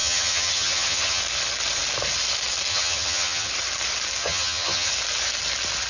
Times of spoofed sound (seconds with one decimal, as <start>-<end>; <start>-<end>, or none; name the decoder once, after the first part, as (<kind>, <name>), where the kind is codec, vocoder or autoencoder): 0.0-1.2 (vocoder, HiFi-GAN); 2.7-3.5; 4.2-4.9